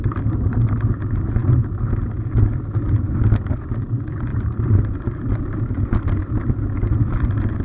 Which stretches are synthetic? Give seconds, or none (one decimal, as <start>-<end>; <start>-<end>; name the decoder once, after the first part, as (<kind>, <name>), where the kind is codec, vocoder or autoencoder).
4.3-4.8 (vocoder, BigVGAN v2)